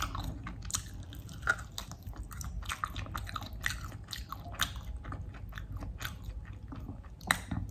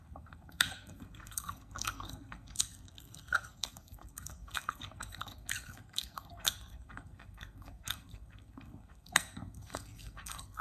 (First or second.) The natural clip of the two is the first